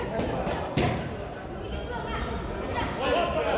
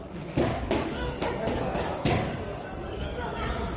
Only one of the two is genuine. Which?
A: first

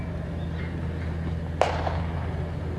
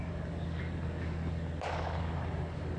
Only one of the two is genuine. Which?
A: first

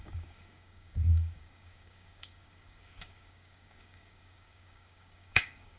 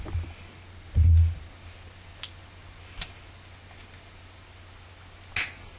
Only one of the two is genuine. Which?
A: second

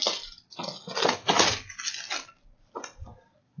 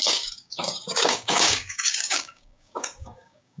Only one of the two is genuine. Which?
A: first